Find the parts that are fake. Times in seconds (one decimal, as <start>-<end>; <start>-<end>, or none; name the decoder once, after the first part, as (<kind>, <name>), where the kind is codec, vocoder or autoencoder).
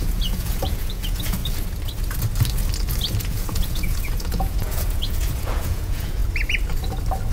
0.0-1.4 (vocoder, Vocos); 3.2-6.2